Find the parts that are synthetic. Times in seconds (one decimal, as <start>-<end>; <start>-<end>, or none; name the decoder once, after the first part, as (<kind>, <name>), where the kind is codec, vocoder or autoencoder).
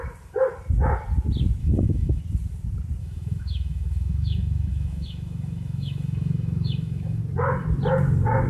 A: 1.6-2.2 (autoencoder, DAC-VAE); 3.0-7.2